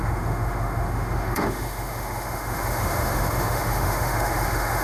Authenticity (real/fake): fake